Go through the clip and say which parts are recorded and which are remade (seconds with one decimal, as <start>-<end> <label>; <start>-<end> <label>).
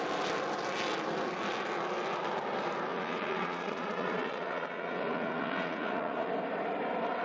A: 0.0-2.9 recorded; 2.9-6.3 remade; 6.3-7.2 recorded